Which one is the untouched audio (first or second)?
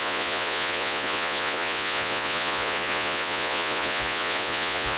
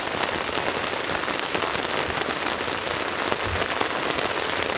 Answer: second